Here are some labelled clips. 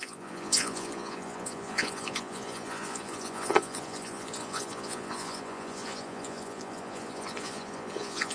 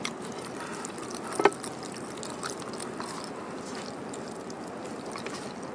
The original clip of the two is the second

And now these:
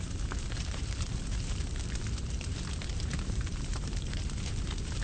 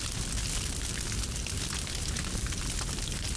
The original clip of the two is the second